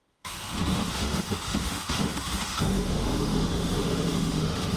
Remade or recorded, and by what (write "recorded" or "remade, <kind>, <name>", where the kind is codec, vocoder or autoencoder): remade, autoencoder, DAC-VAE